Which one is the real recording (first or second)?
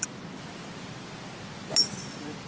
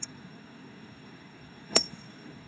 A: first